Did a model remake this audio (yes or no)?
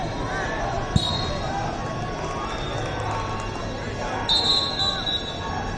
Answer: no